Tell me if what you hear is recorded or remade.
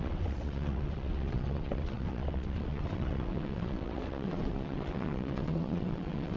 remade